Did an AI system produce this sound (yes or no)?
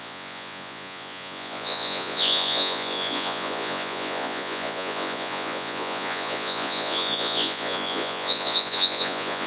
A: yes